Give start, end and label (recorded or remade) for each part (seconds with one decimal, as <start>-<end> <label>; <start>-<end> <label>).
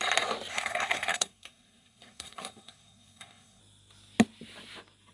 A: 0.0-0.5 recorded; 0.5-3.6 remade; 3.6-5.1 recorded